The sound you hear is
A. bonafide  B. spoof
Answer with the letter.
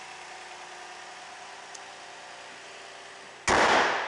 A